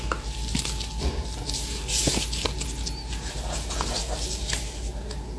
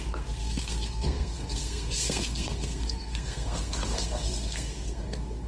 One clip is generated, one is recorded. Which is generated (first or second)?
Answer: second